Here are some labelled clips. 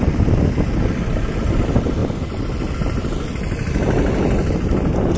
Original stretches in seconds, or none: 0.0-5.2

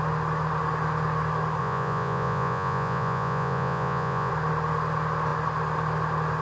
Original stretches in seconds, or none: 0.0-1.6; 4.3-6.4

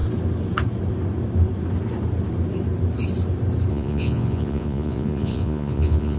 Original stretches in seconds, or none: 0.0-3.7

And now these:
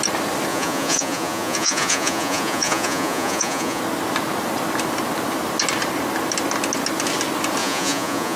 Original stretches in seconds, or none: 0.0-0.5; 3.8-7.6

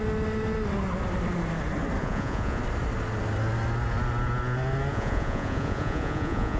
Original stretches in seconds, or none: 0.0-2.0; 2.6-4.9

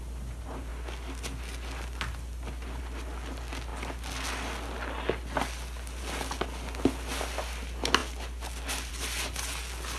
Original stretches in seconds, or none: 0.0-10.0

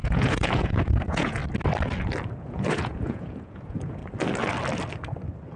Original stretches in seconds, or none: 1.4-2.4; 4.0-5.6